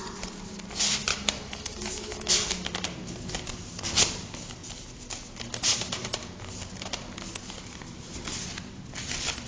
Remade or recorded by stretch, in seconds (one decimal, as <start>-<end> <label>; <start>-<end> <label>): 0.0-1.1 recorded; 1.1-2.3 remade; 2.3-9.5 recorded